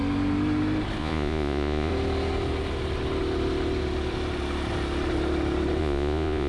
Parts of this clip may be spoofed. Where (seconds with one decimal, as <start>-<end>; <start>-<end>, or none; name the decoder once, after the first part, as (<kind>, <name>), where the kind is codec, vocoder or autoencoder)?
1.0-1.9 (vocoder, Vocos); 5.8-6.5